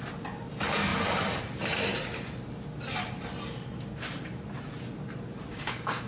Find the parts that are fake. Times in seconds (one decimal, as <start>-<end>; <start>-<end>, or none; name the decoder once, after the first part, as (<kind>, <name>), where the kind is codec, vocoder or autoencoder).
5.5-6.1 (codec, DAC)